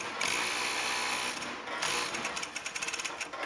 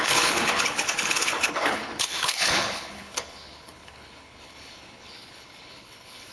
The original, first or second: first